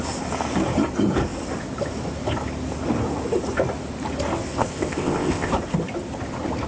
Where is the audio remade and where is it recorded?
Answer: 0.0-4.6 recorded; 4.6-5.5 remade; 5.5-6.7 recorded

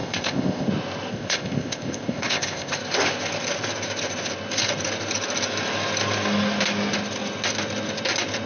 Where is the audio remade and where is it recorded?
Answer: 0.0-0.7 remade; 0.7-1.1 recorded; 1.1-2.7 remade; 2.7-8.5 recorded